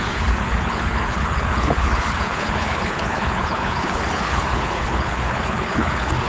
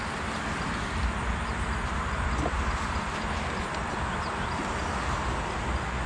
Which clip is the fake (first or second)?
first